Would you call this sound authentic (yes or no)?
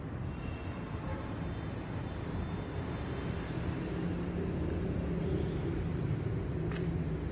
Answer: yes